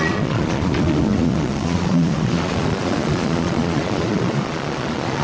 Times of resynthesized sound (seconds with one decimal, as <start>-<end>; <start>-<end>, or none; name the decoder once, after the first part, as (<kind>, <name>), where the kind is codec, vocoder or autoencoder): 0.0-5.2 (vocoder, Vocos)